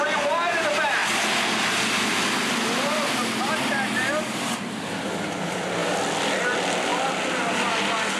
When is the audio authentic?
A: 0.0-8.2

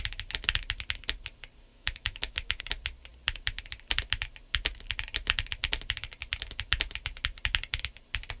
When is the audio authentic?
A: 0.0-1.7; 2.6-8.4

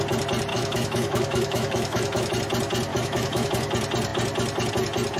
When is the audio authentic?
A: 0.0-0.5; 2.3-2.9; 3.5-5.2

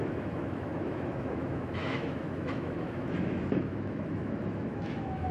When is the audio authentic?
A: none

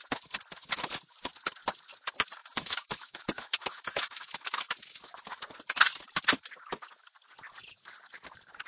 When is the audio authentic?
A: 0.0-2.4; 4.6-8.7

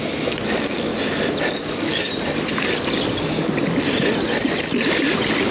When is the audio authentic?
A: 0.9-1.5; 2.0-5.5

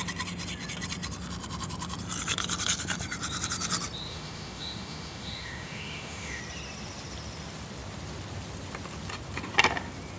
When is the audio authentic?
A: 0.0-4.1; 6.4-10.2

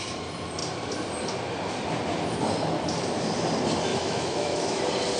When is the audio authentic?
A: 0.0-3.9; 4.8-5.2